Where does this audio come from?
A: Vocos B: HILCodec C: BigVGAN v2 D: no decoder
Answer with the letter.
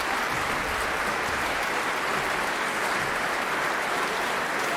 C